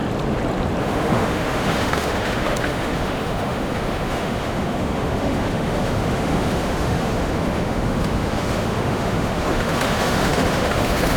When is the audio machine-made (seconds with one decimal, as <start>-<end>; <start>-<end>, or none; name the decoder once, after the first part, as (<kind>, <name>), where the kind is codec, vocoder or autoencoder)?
0.8-11.2 (autoencoder, DAC-VAE)

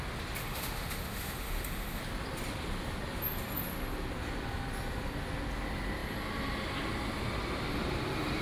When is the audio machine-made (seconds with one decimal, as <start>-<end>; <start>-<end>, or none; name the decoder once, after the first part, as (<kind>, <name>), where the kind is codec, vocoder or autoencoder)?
0.4-2.0 (autoencoder, DAC-VAE)

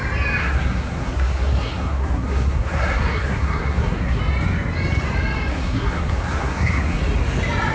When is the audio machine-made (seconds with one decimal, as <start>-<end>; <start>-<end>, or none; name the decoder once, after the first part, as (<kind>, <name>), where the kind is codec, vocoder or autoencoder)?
0.4-4.2 (codec, SNAC); 5.5-7.0

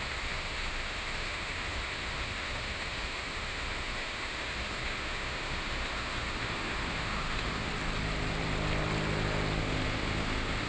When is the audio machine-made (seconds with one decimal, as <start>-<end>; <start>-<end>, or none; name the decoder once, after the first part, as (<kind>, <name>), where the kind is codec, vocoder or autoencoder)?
0.0-7.7 (autoencoder, DAC-VAE); 9.6-10.7

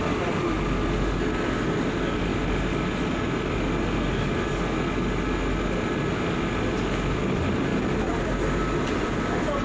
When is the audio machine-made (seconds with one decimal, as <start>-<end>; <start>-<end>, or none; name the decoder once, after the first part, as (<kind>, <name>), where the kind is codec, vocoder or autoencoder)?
none